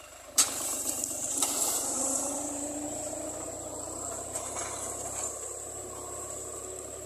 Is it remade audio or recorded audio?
remade